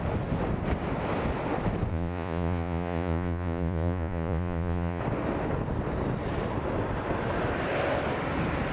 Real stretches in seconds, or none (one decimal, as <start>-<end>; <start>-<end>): 0.0-1.9; 5.0-8.7